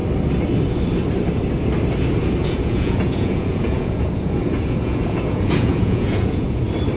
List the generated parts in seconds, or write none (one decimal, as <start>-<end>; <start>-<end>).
2.4-6.6